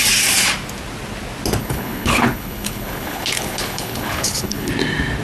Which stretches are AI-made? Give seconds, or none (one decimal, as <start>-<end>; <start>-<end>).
1.6-4.7